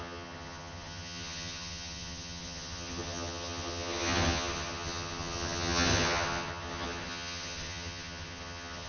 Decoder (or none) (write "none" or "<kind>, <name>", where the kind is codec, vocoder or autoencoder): vocoder, HiFi-GAN